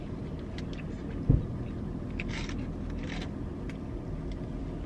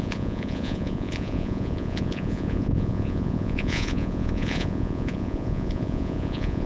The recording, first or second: first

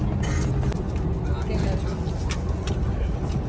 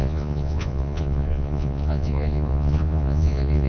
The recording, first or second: first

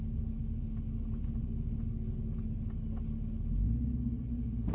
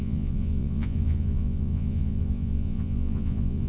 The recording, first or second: first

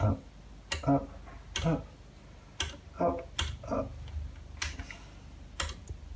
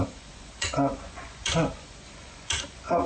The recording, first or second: first